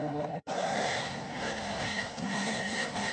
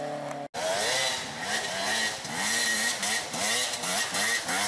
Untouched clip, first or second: second